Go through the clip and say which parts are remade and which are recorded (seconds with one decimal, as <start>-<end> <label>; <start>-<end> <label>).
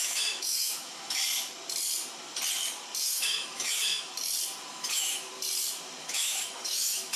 0.0-1.2 remade; 1.2-3.0 recorded; 3.0-4.1 remade; 4.1-4.7 recorded; 4.7-5.3 remade; 5.3-6.0 recorded; 6.0-7.2 remade